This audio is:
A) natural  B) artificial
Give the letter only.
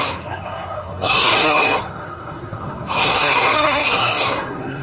B